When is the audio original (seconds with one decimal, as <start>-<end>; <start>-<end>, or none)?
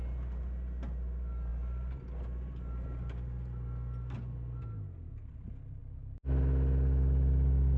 0.0-7.8